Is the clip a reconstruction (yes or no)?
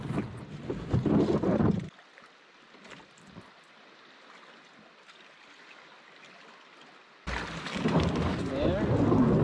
no